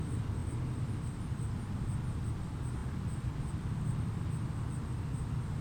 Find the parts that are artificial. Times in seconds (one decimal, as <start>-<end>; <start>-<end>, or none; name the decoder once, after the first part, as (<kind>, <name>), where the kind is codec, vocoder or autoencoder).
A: 0.4-1.2 (vocoder, BigVGAN v2)